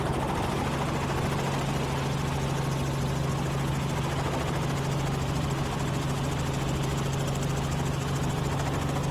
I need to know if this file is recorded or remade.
recorded